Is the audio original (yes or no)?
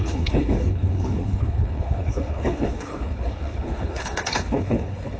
no